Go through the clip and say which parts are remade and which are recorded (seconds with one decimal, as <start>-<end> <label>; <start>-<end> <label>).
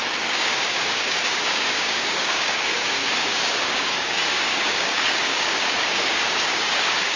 0.0-7.2 remade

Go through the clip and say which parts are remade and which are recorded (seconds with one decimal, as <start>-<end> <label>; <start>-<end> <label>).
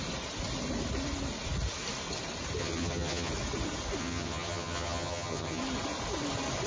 0.0-2.6 recorded; 2.6-3.3 remade; 3.3-4.0 recorded; 4.0-5.6 remade; 5.6-6.7 recorded